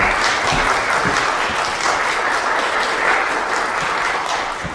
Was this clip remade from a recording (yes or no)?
no